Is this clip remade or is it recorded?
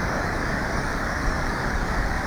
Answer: remade